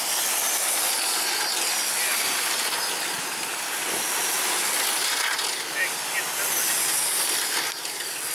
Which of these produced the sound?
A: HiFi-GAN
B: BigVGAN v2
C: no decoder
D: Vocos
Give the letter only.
C